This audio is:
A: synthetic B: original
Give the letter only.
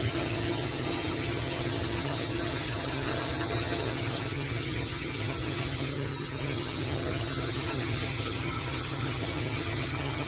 A